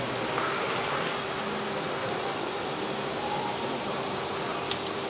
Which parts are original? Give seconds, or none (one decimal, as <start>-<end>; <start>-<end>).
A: 0.0-2.0; 2.7-5.1

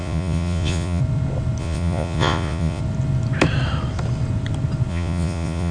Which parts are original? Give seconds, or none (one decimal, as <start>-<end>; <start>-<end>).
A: 1.0-1.6; 2.8-4.9

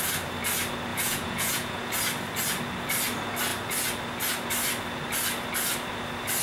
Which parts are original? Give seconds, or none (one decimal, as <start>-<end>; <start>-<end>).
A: 0.0-0.9; 1.9-6.4